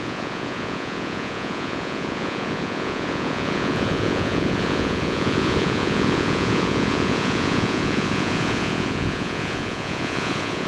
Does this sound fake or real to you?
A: fake